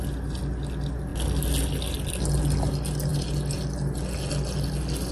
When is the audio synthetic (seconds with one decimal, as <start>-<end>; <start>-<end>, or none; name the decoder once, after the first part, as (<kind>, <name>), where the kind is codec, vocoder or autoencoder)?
none